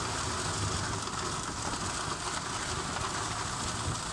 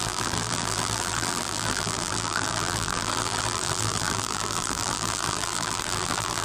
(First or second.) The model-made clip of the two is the second